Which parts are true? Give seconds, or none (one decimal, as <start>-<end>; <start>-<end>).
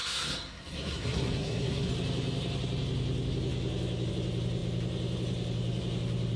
1.9-6.4